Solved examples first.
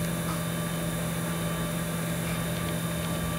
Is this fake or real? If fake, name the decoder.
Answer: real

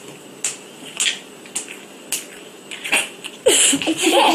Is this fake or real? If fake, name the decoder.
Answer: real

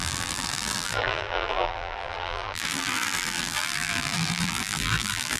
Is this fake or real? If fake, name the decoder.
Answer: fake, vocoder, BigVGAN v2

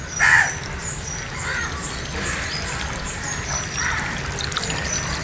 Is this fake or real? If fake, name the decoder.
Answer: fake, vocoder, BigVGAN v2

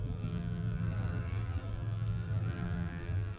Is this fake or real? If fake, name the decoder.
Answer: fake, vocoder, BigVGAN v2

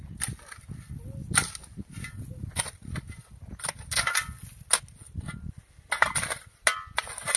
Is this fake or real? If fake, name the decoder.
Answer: real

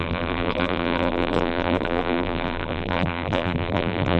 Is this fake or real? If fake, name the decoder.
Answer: fake, vocoder, BigVGAN v2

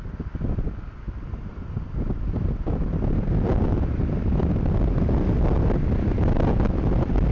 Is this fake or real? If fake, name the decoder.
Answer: fake, vocoder, BigVGAN v2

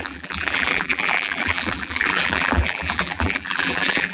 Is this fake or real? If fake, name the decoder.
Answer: fake, vocoder, BigVGAN v2